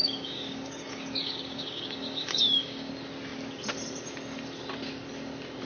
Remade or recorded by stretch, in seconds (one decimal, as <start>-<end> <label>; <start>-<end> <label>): 0.0-2.9 remade; 2.9-5.7 recorded